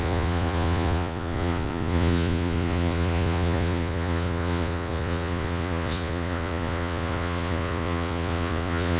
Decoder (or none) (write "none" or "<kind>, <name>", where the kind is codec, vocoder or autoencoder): vocoder, Vocos